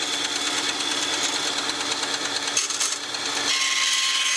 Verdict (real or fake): real